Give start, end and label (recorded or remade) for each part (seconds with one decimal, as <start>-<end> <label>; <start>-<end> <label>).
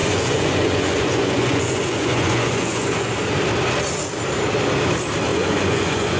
0.0-3.1 remade; 3.1-5.3 recorded; 5.3-6.2 remade